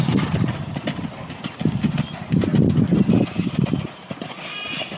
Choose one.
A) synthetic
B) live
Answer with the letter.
B